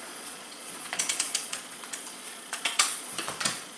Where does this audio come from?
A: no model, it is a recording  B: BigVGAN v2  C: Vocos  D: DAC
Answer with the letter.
C